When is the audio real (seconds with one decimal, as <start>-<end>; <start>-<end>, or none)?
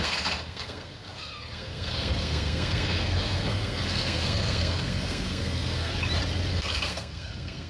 5.9-6.5